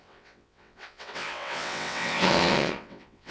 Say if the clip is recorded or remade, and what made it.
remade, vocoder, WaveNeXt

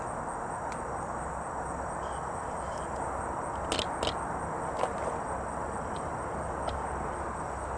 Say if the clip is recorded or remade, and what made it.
recorded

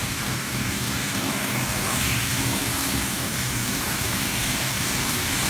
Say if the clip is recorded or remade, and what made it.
remade, codec, DAC